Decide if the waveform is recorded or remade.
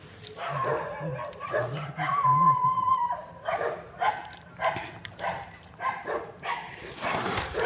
remade